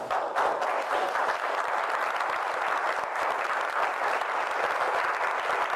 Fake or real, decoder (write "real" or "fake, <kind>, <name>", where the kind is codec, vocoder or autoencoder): real